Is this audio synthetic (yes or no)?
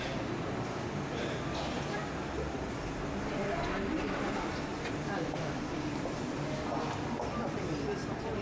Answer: no